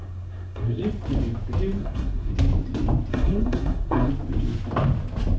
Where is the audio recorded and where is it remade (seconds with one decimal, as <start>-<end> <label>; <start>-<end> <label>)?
0.0-0.8 remade; 0.8-1.8 recorded; 1.8-2.3 remade; 2.3-3.1 recorded; 3.1-4.1 remade; 4.1-5.4 recorded